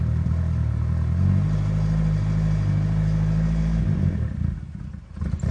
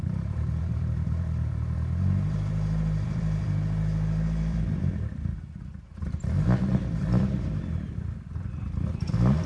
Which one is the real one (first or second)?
first